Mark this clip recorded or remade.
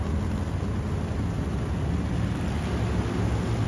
recorded